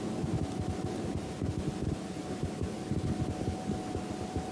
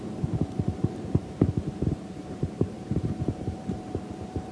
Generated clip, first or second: second